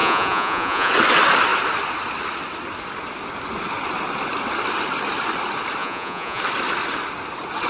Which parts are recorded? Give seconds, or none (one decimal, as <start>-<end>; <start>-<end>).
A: 0.9-5.8; 6.4-7.7